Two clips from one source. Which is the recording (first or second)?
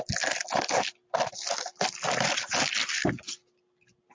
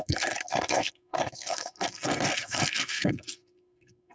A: first